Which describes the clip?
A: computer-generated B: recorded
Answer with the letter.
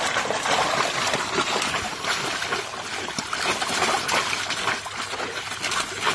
B